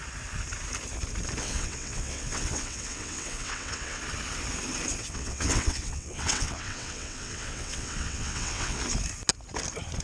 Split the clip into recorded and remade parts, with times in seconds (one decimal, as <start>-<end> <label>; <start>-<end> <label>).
0.0-1.4 recorded; 1.4-4.0 remade; 4.0-5.0 recorded; 5.0-8.8 remade; 8.8-10.0 recorded